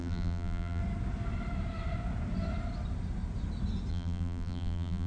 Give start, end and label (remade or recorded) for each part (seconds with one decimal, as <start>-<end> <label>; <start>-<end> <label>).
0.0-0.8 remade; 0.8-3.9 recorded; 3.9-5.1 remade